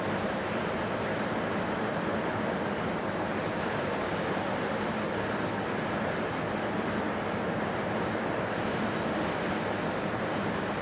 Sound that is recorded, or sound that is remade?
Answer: recorded